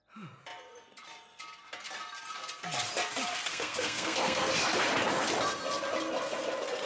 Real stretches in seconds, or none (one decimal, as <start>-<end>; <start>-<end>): 0.0-3.5; 4.5-6.9